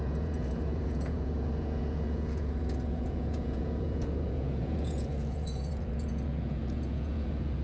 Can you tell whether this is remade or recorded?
remade